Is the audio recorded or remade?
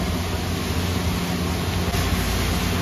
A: recorded